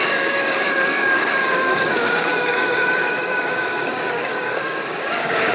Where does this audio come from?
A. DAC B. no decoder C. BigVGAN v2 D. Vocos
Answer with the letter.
A